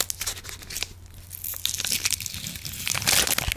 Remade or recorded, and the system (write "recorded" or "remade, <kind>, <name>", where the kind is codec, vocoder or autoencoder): recorded